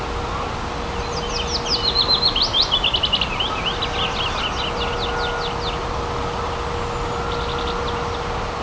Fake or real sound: real